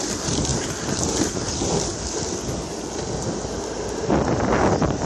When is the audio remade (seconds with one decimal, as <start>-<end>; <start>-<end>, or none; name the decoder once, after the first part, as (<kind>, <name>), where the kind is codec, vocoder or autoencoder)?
none